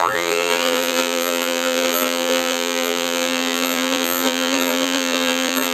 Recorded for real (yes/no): no